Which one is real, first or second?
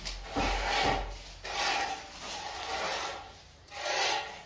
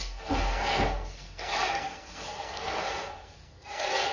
first